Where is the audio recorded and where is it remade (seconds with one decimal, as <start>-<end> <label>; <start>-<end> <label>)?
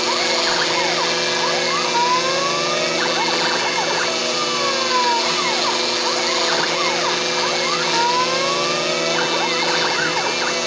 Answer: 0.0-10.7 recorded